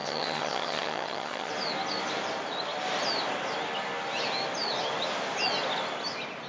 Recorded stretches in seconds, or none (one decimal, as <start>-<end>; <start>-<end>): 1.5-6.5